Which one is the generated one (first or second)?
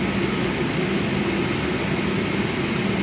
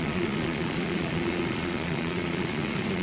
second